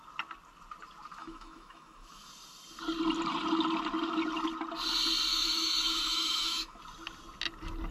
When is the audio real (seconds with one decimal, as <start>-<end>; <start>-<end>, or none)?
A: 0.0-1.2; 2.3-5.3; 6.8-7.9